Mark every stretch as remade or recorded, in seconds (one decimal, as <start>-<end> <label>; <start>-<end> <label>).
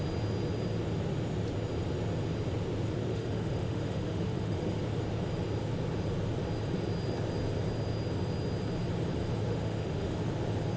0.0-3.1 recorded; 3.1-4.8 remade; 4.8-9.5 recorded; 9.5-10.2 remade; 10.2-10.8 recorded